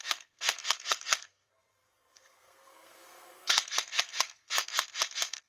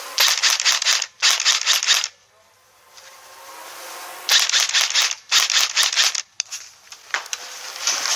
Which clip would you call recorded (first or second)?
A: second